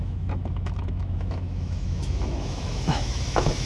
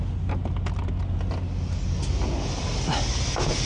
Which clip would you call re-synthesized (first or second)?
first